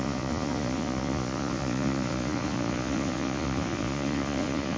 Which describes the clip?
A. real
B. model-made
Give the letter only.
B